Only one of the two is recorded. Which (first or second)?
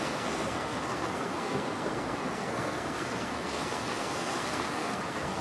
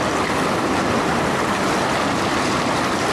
second